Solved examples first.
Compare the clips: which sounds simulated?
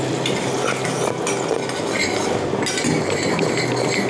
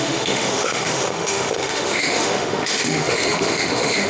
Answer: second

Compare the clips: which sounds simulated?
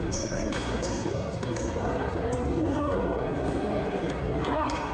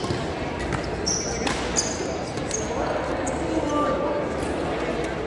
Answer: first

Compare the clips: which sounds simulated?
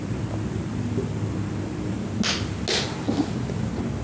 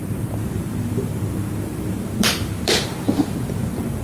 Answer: second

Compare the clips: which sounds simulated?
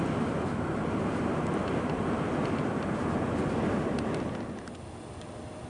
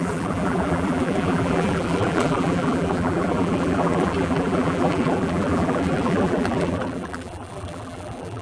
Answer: second